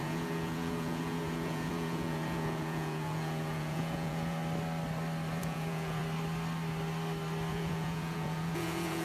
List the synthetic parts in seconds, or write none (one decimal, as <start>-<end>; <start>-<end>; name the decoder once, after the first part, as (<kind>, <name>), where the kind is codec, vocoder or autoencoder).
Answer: 0.0-4.4 (vocoder, Vocos); 5.4-6.0; 7.5-9.0